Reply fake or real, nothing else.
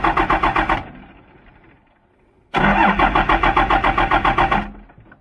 real